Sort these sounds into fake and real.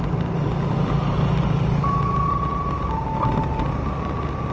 real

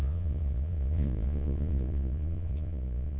fake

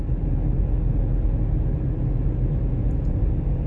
real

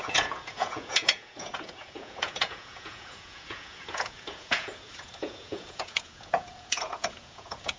fake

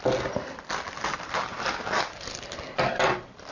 real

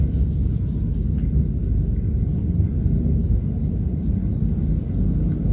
real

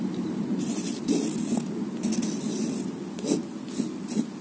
real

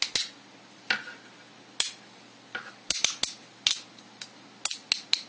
real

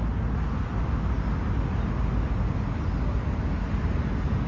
real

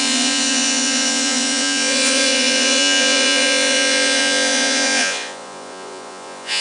fake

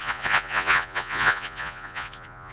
fake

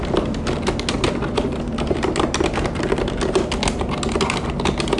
real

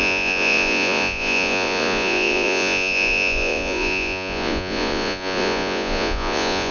fake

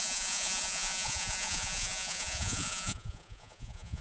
fake